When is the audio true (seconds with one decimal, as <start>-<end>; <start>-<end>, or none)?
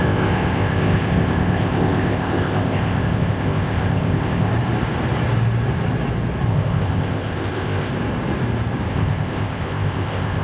4.5-6.5; 7.9-8.9